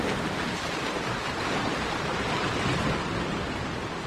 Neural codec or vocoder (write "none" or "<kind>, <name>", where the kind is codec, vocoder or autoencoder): none